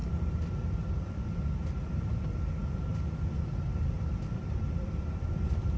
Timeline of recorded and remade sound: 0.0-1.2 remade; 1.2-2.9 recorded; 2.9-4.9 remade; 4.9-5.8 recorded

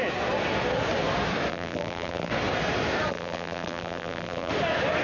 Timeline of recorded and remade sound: 0.0-1.5 recorded; 1.5-2.3 remade; 2.3-3.1 recorded; 3.1-4.5 remade; 4.5-5.0 recorded

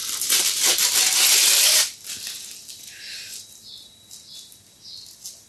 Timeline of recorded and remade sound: 0.0-5.5 recorded

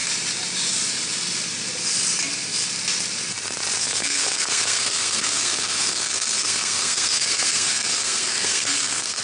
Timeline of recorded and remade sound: 0.0-3.8 recorded; 3.8-9.2 remade